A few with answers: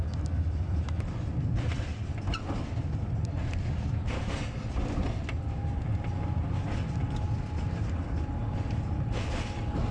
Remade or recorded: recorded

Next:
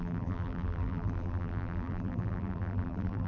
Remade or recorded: remade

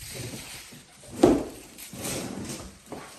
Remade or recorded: remade